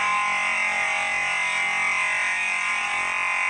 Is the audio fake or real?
real